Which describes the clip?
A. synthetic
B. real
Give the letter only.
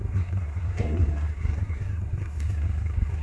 A